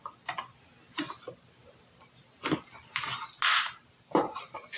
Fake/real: real